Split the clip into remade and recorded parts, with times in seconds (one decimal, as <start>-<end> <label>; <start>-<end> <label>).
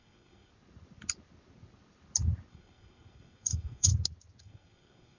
0.0-0.5 remade; 0.5-2.5 recorded; 2.5-3.9 remade; 3.9-4.4 recorded; 4.4-5.2 remade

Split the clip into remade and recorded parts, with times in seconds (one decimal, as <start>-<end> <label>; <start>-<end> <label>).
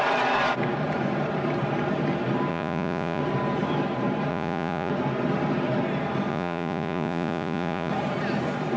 0.0-2.5 recorded; 2.5-3.2 remade; 3.2-4.3 recorded; 4.3-4.9 remade; 4.9-6.3 recorded; 6.3-7.9 remade; 7.9-8.8 recorded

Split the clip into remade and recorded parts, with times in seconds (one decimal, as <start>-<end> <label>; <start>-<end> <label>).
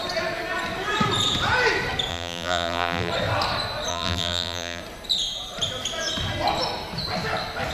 0.0-2.1 recorded; 2.1-3.1 remade; 3.1-3.9 recorded; 3.9-4.8 remade; 4.8-7.7 recorded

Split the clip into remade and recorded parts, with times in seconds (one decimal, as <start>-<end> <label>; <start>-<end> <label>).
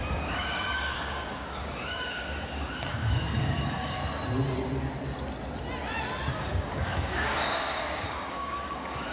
0.0-4.0 remade; 4.0-6.3 recorded; 6.3-9.1 remade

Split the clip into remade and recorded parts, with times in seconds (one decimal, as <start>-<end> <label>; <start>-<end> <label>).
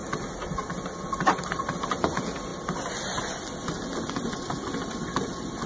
0.0-5.7 recorded